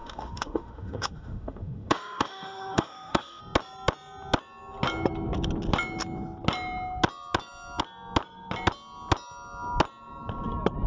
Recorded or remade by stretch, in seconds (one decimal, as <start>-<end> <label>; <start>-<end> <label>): 0.0-3.4 remade; 3.4-10.9 recorded